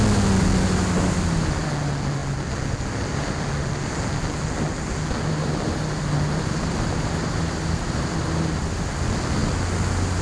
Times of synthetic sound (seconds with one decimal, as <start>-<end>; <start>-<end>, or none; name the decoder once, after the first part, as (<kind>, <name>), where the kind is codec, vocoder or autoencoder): none